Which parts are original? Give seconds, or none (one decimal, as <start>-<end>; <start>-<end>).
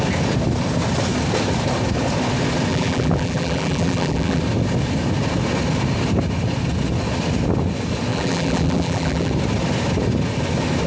0.0-2.7; 4.4-8.1; 9.3-10.9